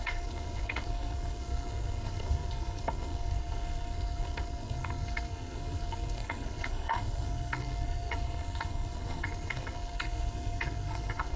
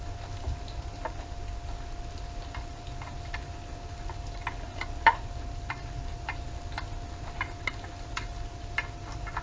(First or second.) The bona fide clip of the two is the second